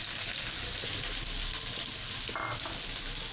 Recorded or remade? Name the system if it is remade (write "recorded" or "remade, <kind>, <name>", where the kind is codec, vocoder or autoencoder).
recorded